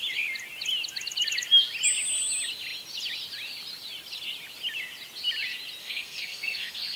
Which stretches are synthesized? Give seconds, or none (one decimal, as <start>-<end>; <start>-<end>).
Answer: 5.8-7.0